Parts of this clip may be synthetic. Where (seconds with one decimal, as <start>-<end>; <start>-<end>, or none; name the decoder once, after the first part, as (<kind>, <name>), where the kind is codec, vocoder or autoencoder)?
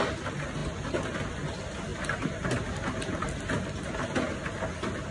none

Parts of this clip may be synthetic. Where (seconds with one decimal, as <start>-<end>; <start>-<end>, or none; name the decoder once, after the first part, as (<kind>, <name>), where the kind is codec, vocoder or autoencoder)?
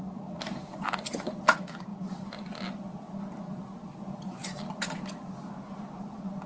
none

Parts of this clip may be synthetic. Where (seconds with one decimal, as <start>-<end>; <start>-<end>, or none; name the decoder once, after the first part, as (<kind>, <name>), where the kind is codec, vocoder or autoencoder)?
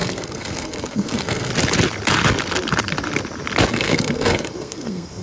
0.0-1.5 (codec, SNAC); 3.7-5.2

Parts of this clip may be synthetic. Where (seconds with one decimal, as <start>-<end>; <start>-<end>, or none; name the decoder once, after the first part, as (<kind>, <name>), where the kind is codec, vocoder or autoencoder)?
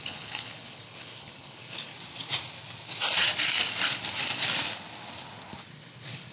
0.0-1.9 (codec, HILCodec); 5.7-6.3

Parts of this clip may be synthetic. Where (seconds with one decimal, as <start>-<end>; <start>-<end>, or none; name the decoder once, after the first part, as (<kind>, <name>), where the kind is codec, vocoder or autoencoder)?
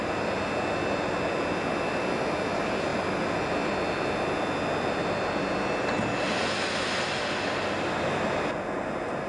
none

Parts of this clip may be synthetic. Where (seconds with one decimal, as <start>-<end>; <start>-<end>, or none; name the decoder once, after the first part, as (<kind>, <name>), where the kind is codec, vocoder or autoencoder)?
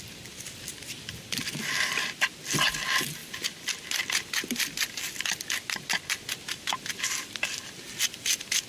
none